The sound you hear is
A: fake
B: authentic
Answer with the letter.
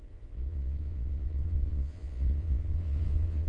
A